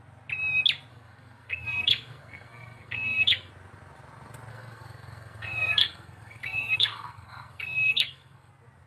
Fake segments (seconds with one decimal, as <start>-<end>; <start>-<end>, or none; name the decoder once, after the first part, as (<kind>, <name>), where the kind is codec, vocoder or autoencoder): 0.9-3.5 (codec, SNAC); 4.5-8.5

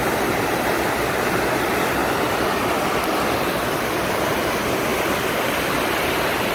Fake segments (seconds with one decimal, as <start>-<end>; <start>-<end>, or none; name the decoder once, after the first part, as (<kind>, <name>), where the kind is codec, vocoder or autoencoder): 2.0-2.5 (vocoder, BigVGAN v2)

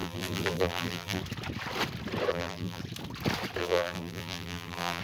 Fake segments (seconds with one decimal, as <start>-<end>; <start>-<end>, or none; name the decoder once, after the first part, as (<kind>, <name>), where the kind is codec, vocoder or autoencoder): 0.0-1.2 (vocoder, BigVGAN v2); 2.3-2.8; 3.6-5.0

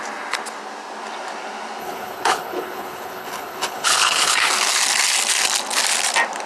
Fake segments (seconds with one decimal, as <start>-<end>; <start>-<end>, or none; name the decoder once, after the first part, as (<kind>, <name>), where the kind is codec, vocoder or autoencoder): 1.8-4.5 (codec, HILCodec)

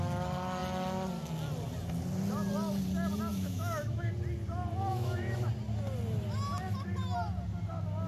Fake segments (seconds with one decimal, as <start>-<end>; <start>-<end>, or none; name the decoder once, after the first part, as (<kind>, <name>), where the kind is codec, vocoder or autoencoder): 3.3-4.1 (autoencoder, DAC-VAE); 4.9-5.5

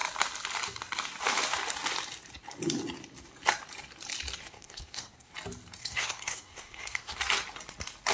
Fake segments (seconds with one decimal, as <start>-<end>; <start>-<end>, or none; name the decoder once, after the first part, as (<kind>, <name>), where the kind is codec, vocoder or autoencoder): 4.5-5.3 (codec, SNAC); 5.8-7.2